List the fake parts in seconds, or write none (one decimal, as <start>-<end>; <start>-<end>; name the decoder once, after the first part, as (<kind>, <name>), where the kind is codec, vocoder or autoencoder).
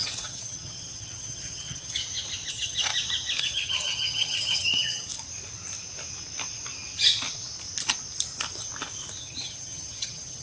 0.0-2.0 (vocoder, HiFi-GAN); 2.5-2.9; 3.4-5.1; 9.2-10.4